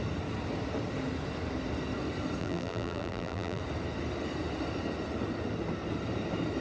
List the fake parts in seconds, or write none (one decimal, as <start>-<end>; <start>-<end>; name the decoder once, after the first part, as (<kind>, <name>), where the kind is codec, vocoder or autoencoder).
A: 2.4-3.6 (vocoder, BigVGAN v2)

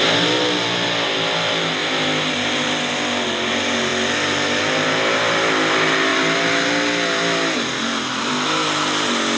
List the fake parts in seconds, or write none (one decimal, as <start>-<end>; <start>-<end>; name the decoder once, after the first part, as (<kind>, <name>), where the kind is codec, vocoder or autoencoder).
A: 1.8-2.9 (vocoder, BigVGAN v2); 3.9-4.6

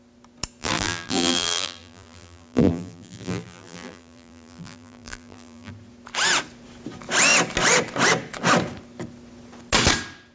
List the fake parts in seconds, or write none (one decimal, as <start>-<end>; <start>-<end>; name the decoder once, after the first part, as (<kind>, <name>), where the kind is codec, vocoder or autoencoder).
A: 0.6-5.7 (vocoder, BigVGAN v2)

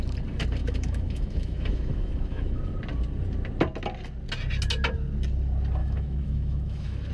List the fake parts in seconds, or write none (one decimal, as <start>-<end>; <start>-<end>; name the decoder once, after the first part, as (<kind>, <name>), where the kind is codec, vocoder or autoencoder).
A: 0.6-2.6 (autoencoder, DAC-VAE); 5.8-7.1

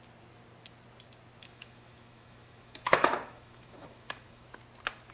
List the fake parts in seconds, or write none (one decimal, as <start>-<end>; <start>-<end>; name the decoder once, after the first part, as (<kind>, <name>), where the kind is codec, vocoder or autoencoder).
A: 1.4-4.5 (autoencoder, DAC-VAE)

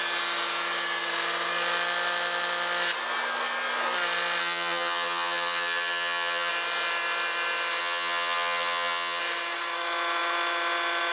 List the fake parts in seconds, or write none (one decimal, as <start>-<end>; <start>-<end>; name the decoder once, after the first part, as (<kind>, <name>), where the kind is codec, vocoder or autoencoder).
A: 4.4-6.5 (vocoder, HiFi-GAN); 7.8-9.2

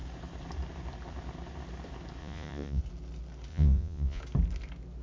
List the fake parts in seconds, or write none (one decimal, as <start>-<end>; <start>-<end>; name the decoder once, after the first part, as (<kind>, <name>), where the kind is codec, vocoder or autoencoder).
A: 2.2-2.8 (vocoder, Vocos); 3.5-4.2

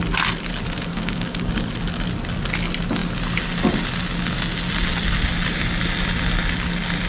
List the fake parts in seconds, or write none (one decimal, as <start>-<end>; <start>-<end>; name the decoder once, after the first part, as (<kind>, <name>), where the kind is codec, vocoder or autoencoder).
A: 0.9-1.5 (codec, DAC)